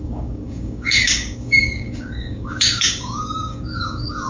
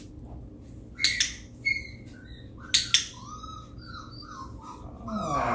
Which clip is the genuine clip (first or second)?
second